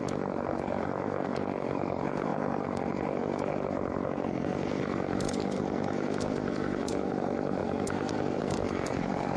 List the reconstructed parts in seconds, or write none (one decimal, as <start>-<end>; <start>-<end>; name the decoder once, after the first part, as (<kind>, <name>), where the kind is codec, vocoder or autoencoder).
0.0-9.4 (codec, SNAC)